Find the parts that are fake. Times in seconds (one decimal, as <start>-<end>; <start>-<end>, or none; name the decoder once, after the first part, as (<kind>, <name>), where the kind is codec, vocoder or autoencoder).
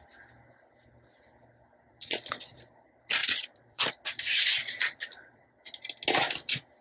1.9-2.6 (vocoder, Vocos); 3.2-3.9; 4.6-5.7